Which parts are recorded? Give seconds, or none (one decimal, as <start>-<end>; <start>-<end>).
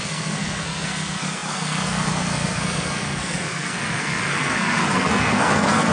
none